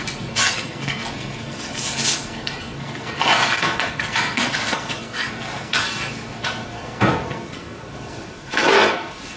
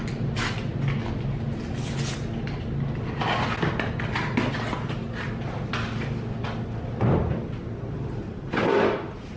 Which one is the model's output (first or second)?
first